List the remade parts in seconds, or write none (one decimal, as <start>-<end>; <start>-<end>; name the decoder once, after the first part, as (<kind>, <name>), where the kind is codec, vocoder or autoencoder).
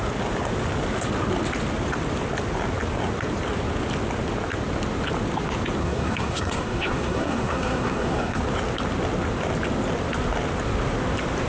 5.8-8.4 (codec, SNAC)